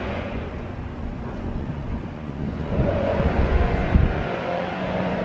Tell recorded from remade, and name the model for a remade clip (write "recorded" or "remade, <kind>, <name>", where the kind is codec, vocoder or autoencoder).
remade, vocoder, Vocos